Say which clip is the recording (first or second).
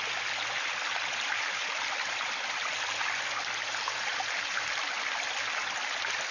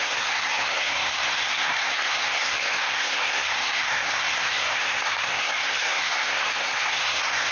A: first